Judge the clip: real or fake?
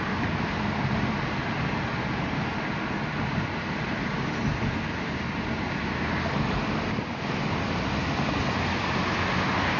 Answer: real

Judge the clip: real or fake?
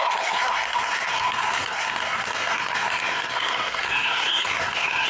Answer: fake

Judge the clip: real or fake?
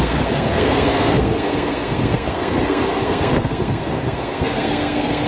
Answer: fake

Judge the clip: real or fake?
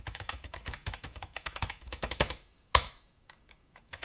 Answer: fake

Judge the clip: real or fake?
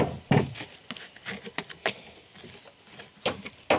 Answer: real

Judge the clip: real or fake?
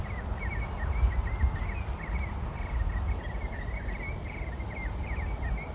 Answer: real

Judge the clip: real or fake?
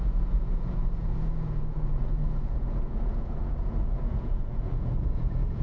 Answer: fake